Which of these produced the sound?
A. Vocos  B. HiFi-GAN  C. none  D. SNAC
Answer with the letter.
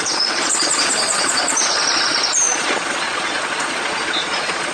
A